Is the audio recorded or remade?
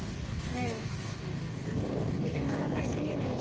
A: remade